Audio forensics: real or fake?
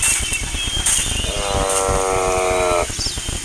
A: real